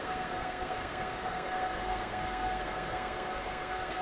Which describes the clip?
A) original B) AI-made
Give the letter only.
B